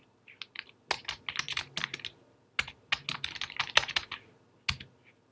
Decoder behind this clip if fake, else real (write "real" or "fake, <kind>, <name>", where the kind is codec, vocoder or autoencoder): real